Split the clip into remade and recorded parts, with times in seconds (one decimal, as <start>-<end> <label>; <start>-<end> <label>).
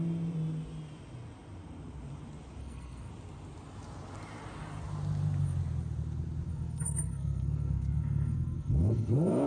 0.0-2.6 recorded; 2.6-3.1 remade; 3.1-6.5 recorded; 6.5-9.5 remade